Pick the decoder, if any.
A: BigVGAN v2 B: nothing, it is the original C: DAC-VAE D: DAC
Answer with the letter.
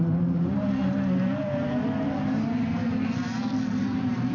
A